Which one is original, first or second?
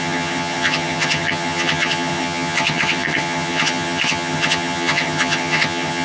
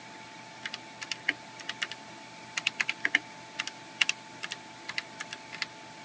second